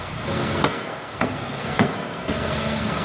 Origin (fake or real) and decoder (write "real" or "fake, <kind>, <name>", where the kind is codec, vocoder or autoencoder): fake, codec, SNAC